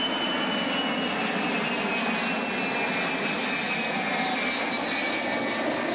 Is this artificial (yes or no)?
no